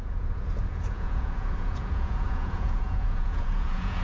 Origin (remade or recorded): remade